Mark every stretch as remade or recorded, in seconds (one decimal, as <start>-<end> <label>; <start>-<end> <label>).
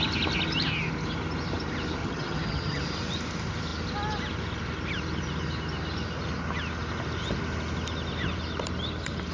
0.0-2.0 recorded; 2.0-2.8 remade; 2.8-9.3 recorded